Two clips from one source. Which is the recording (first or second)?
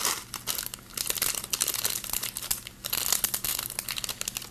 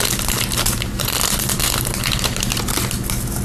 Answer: first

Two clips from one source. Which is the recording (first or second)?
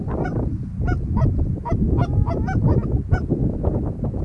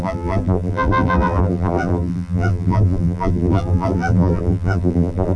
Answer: first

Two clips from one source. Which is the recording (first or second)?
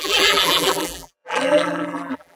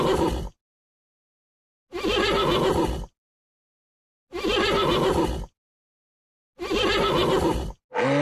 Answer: second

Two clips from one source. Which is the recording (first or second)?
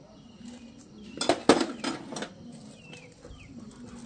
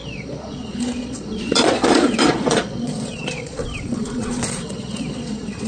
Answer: first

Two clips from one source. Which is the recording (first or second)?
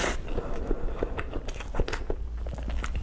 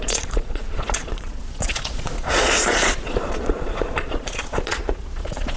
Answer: first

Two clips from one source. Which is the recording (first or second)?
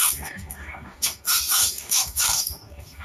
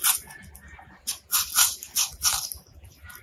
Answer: second